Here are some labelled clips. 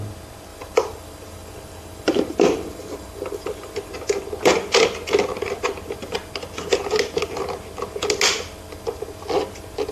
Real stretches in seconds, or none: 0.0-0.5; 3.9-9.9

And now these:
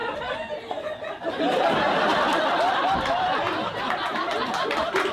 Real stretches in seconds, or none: 0.0-5.1